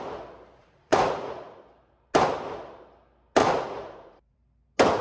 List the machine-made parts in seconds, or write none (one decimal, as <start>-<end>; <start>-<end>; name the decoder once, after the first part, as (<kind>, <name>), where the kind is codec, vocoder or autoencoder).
0.6-1.6 (vocoder, Vocos); 3.4-4.4